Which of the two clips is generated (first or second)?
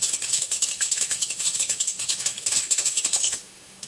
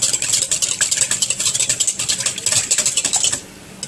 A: first